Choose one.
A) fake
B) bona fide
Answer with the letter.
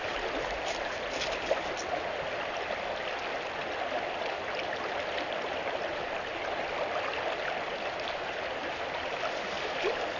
B